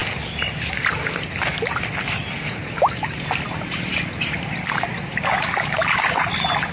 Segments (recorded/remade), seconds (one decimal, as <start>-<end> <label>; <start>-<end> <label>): 0.0-6.7 recorded